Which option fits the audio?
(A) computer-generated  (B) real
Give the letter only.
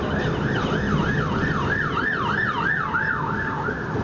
B